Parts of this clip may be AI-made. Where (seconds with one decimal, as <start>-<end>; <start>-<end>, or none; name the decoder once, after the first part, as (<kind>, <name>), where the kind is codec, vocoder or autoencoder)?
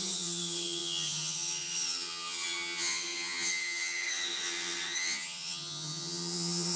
0.0-6.8 (vocoder, HiFi-GAN)